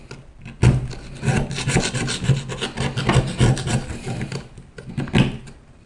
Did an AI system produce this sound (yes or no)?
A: no